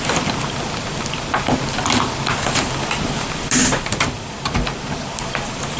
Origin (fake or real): real